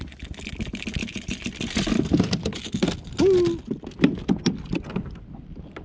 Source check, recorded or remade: recorded